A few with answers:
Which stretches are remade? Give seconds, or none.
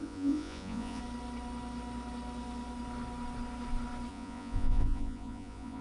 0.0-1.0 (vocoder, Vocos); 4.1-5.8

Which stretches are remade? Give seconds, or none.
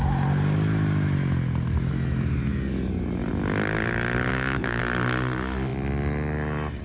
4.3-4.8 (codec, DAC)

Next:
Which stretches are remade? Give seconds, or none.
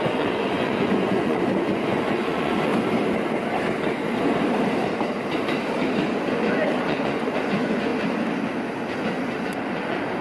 0.0-2.7 (vocoder, Vocos); 6.8-7.9; 9.2-10.2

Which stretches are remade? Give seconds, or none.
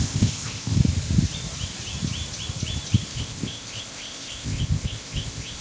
0.0-0.8 (codec, ZipCodec); 3.1-5.6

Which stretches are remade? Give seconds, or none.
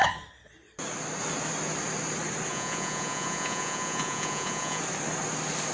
2.5-4.8 (vocoder, Vocos)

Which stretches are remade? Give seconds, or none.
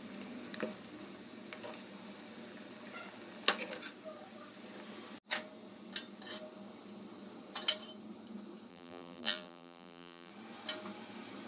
8.7-10.3 (vocoder, BigVGAN v2)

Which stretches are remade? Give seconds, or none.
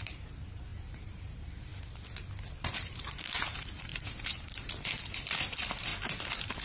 0.0-1.7 (vocoder, BigVGAN v2); 2.5-5.9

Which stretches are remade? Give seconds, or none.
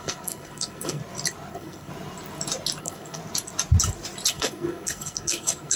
0.0-1.0 (codec, SNAC); 1.5-1.9; 2.8-3.2; 4.3-5.8